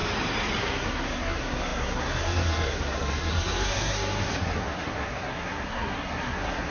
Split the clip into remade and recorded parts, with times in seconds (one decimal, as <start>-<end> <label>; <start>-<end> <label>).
0.0-0.6 recorded; 0.6-6.7 remade